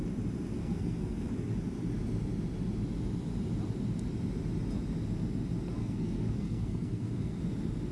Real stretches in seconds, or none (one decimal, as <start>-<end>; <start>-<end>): 0.0-0.6; 1.3-5.8; 7.4-7.9